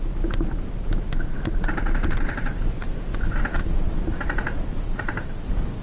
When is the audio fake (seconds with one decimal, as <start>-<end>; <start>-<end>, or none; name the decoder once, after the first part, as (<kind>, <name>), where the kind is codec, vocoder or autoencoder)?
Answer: none